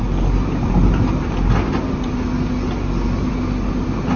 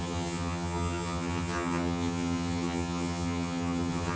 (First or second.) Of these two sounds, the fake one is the second